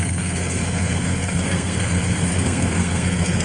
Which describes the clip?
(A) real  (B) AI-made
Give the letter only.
B